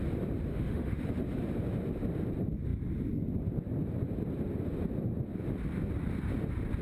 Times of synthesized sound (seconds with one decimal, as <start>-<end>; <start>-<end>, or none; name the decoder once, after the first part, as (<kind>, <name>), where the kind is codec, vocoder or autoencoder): 0.5-1.0 (autoencoder, DAC-VAE)